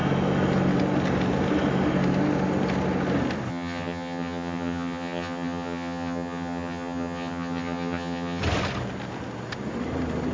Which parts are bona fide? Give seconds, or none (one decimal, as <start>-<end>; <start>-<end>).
0.0-3.5; 8.4-10.3